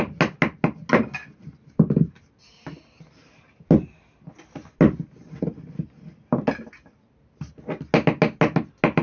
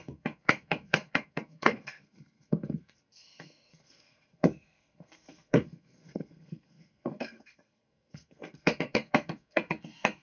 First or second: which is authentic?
first